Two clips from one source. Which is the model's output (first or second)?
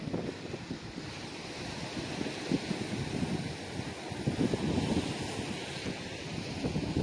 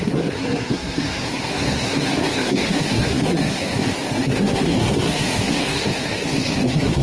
second